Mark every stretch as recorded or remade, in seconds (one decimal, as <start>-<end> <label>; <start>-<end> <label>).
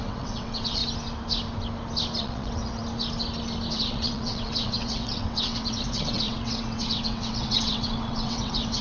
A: 0.0-0.8 remade; 0.8-2.2 recorded; 2.2-2.8 remade; 2.8-3.7 recorded; 3.7-8.8 remade